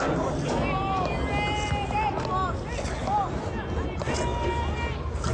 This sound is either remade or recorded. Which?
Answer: recorded